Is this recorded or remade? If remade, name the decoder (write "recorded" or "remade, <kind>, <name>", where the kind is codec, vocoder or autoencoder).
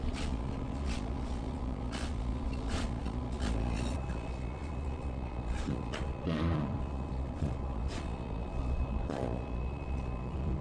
remade, vocoder, Vocos